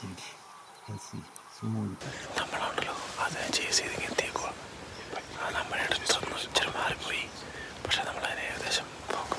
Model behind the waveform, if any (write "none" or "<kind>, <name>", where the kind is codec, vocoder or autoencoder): none